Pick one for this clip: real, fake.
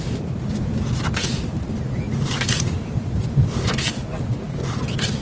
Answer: real